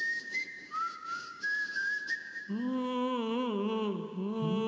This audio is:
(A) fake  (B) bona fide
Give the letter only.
A